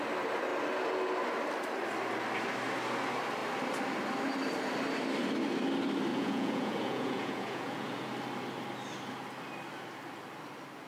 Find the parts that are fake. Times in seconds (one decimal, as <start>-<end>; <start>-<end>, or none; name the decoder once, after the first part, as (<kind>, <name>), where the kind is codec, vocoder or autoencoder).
6.1-8.1 (vocoder, Vocos)